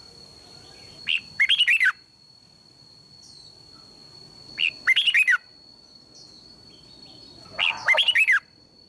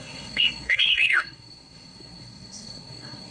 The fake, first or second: second